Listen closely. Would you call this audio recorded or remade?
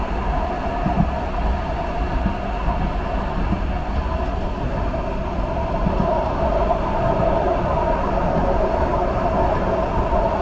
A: recorded